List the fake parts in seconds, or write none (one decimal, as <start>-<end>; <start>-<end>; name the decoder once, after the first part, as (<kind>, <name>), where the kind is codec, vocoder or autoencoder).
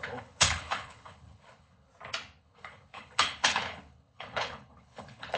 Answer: 0.0-1.9 (codec, HILCodec); 2.4-5.4